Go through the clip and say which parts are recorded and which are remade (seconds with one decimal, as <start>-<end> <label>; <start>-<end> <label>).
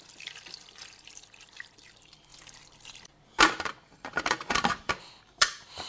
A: 0.0-5.9 remade